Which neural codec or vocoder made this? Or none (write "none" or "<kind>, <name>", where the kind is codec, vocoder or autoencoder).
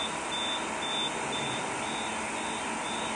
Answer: none